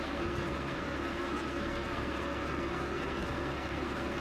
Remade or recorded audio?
remade